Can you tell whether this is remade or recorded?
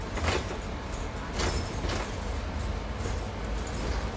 recorded